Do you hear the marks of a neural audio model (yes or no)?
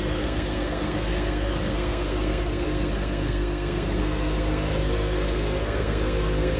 yes